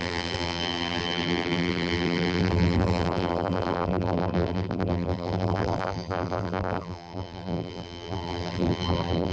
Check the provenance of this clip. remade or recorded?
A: remade